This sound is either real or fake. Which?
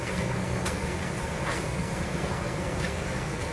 fake